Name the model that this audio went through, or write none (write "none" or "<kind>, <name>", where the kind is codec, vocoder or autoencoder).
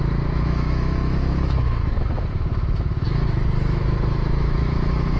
autoencoder, DAC-VAE